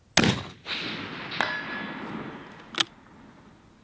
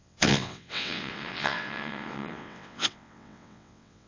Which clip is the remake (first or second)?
second